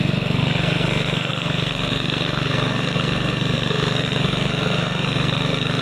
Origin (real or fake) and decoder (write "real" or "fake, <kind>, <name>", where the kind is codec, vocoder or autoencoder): fake, codec, SNAC